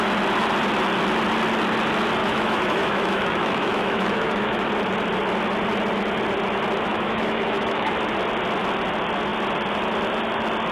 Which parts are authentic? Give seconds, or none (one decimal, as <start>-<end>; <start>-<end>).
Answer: 0.0-2.2; 4.7-6.9; 7.9-10.7